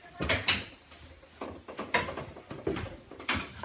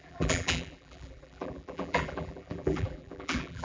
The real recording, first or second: first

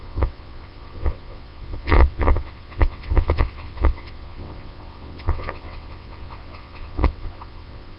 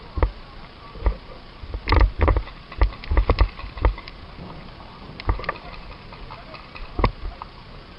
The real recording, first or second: second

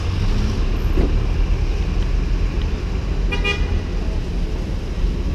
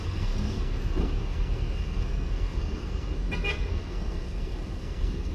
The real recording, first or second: first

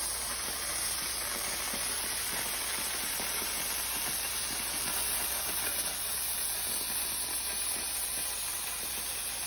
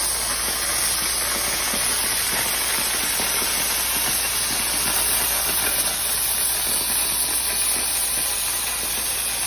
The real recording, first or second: second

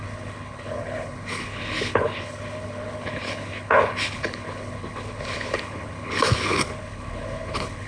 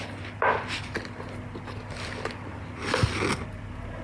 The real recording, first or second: second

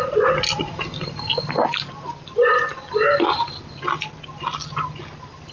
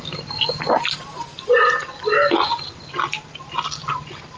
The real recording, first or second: first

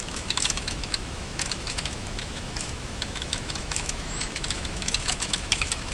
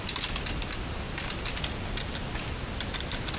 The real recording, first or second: second